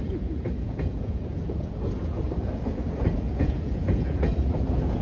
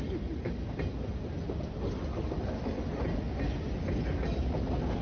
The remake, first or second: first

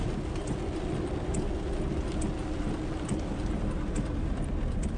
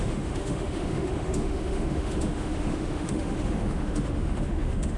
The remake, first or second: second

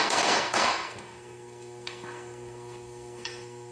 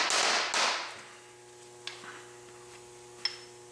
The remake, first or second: first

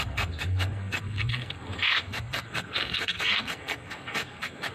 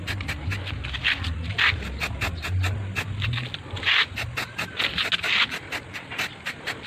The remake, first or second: first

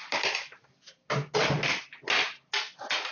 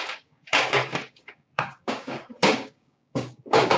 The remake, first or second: second